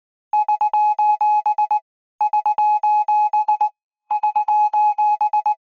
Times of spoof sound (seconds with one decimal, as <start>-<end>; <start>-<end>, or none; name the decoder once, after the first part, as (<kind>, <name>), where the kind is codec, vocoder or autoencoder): 3.4-5.1 (codec, SNAC)